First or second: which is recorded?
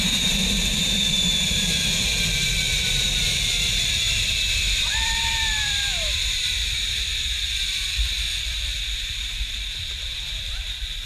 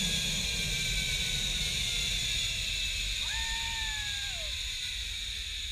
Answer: second